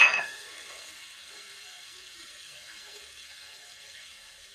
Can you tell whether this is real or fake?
fake